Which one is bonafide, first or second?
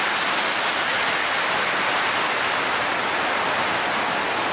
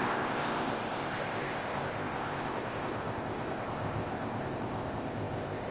first